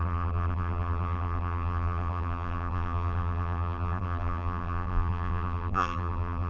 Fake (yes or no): yes